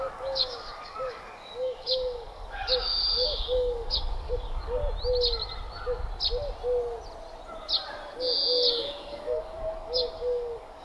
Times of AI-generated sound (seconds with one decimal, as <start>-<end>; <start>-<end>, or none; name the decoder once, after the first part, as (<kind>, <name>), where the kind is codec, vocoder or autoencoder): 0.0-4.8 (codec, DAC); 8.8-10.8